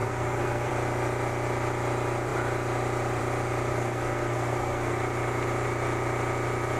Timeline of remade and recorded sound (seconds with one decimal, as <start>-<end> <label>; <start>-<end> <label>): 0.0-0.7 remade; 0.7-3.7 recorded; 3.7-5.0 remade; 5.0-6.8 recorded